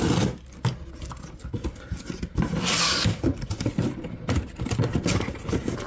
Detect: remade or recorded recorded